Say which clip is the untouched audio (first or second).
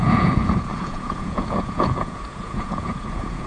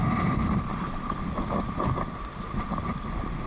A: second